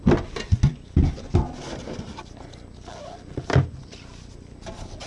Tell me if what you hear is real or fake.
real